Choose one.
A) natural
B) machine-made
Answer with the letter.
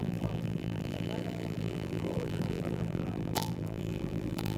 B